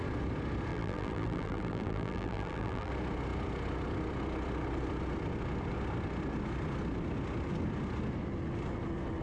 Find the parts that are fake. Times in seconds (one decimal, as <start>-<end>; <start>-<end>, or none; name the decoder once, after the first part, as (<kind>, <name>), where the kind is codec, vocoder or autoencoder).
0.7-2.9 (vocoder, BigVGAN v2)